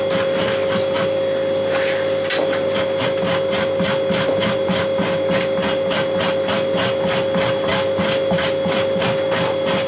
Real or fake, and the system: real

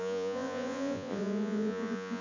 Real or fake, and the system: fake, vocoder, Vocos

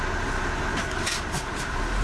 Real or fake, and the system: real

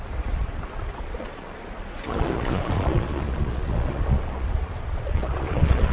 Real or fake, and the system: fake, vocoder, Vocos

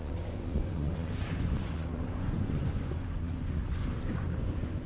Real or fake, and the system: fake, vocoder, Vocos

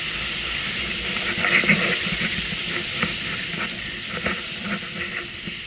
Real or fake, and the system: real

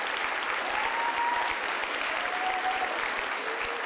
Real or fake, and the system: real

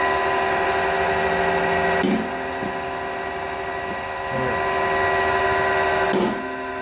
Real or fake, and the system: real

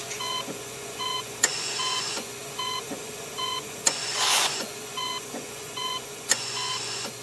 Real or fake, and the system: fake, vocoder, Vocos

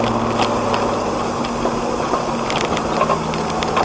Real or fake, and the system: real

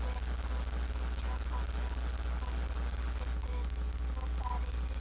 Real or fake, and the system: real